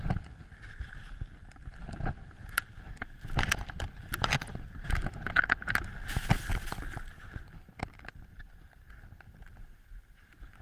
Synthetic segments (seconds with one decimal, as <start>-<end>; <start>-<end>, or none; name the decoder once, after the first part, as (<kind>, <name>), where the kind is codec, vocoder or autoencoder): none